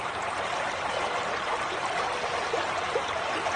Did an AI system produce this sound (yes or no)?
no